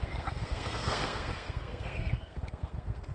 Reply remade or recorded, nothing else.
remade